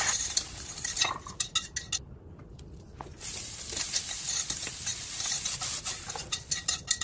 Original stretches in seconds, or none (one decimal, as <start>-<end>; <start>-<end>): 0.0-7.0